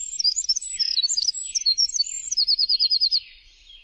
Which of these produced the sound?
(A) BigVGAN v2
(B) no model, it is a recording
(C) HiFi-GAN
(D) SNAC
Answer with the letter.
A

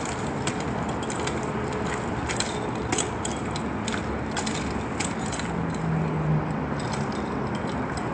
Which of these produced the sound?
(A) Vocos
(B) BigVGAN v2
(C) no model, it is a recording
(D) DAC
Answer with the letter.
C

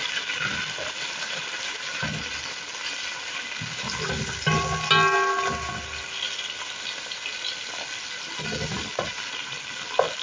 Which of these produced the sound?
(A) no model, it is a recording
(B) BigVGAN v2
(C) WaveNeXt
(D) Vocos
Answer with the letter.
A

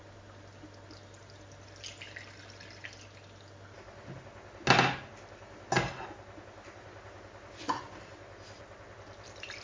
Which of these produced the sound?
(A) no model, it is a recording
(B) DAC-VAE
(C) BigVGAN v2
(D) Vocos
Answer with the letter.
A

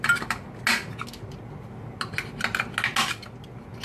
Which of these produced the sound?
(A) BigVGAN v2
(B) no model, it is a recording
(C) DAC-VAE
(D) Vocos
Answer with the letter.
B